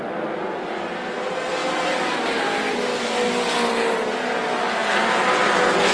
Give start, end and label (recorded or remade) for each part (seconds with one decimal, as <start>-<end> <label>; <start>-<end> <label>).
0.0-5.9 recorded